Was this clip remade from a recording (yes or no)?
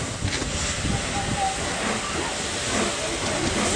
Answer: no